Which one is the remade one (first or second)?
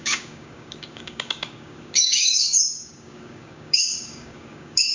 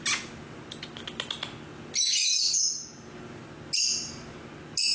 first